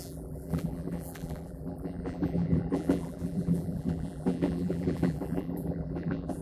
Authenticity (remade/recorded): remade